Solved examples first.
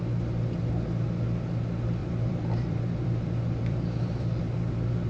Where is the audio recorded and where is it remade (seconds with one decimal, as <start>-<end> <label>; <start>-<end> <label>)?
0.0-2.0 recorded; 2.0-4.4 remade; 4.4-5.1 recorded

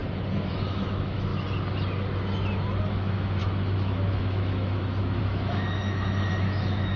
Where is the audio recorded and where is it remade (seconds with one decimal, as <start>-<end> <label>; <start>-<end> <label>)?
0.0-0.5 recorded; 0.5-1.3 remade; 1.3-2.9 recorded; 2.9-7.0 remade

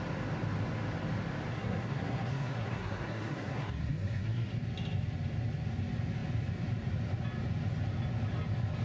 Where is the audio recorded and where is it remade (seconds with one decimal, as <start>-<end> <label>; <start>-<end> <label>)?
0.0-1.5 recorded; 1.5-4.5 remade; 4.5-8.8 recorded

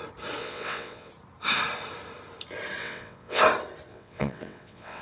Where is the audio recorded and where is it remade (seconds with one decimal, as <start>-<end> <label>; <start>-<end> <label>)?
0.0-0.4 recorded; 0.4-1.1 remade; 1.1-2.8 recorded; 2.8-3.4 remade; 3.4-3.9 recorded; 3.9-5.0 remade